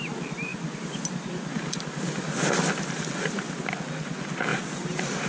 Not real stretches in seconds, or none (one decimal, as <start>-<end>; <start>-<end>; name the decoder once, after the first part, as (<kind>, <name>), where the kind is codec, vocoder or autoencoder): 4.5-5.3 (vocoder, BigVGAN v2)